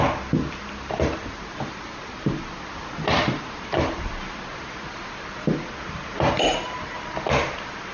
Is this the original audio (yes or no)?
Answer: yes